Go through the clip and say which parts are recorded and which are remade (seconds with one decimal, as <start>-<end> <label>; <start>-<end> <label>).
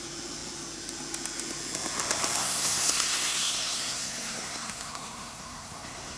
0.0-2.4 recorded; 2.4-6.2 remade